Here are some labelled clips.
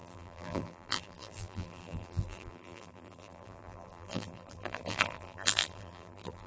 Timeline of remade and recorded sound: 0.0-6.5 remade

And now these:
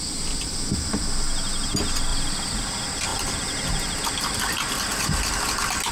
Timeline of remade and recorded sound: 0.0-2.1 recorded; 2.1-2.7 remade; 2.7-3.1 recorded; 3.1-4.5 remade; 4.5-5.9 recorded

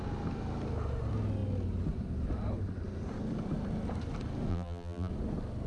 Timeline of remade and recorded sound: 0.0-4.5 recorded; 4.5-5.1 remade; 5.1-5.7 recorded